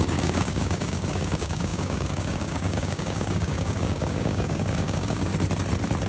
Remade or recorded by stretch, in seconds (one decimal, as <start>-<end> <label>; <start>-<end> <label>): 0.0-5.3 remade; 5.3-6.1 recorded

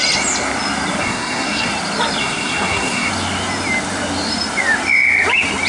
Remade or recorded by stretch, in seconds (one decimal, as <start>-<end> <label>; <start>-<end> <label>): 0.0-1.0 recorded; 1.0-1.7 remade; 1.7-2.2 recorded; 2.2-3.1 remade; 3.1-5.7 recorded